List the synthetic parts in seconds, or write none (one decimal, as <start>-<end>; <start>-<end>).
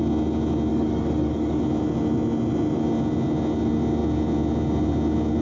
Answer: 0.7-1.6